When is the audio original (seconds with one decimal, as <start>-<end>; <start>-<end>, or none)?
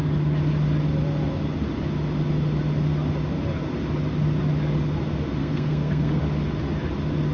0.0-5.4; 6.2-7.3